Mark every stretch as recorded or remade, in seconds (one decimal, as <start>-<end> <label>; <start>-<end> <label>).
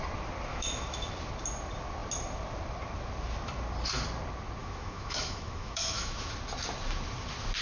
0.0-0.5 recorded; 0.5-1.1 remade; 1.1-4.6 recorded; 4.6-6.3 remade; 6.3-7.6 recorded